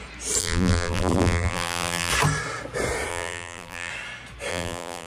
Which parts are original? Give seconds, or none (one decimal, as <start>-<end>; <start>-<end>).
0.0-0.4; 2.1-3.1; 3.9-4.5